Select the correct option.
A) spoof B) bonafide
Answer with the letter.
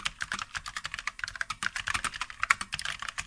B